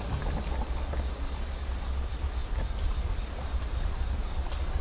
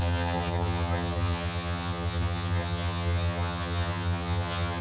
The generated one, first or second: second